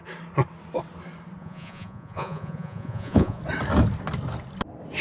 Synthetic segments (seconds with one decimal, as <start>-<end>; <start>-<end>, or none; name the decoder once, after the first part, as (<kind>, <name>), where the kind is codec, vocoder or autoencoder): 1.4-3.4 (vocoder, Vocos)